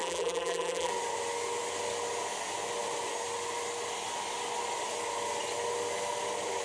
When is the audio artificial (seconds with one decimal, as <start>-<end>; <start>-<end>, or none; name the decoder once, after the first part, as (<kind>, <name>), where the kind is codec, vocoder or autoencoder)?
0.0-0.9 (vocoder, BigVGAN v2)